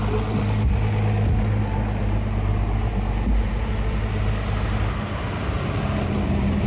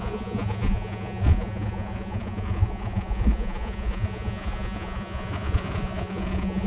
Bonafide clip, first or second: first